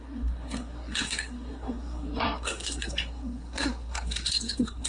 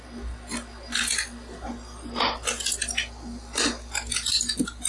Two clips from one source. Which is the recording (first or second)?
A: second